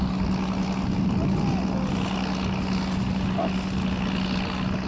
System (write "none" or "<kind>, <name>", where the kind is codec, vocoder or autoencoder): none